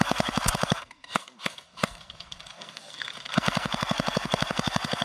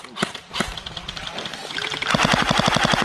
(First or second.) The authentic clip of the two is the second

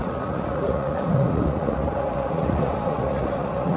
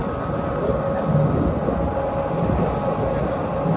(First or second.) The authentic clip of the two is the second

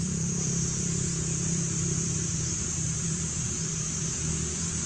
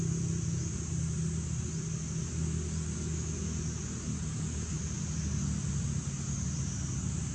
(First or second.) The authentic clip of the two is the second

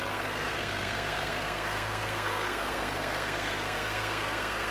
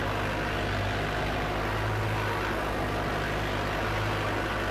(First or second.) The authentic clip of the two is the second